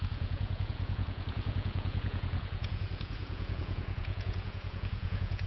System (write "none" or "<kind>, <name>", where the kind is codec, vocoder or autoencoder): vocoder, Vocos